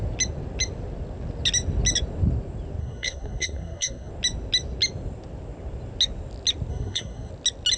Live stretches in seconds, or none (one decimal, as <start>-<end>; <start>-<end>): 0.0-2.8; 4.1-6.7; 7.3-7.8